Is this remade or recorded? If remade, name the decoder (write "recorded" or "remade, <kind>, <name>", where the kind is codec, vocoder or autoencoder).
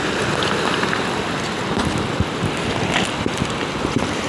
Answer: recorded